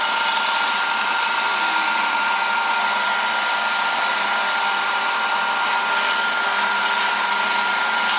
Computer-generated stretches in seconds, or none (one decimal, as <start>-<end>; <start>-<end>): none